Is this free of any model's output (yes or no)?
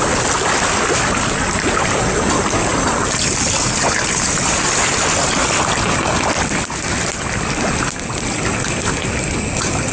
yes